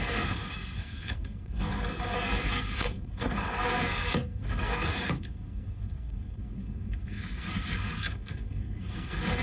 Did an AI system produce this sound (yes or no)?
yes